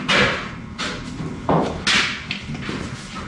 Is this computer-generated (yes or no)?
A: no